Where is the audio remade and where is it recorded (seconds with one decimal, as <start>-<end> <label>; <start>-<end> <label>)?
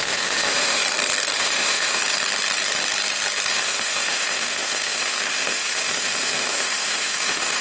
0.0-0.8 remade; 0.8-1.4 recorded; 1.4-2.0 remade; 2.0-3.5 recorded; 3.5-7.6 remade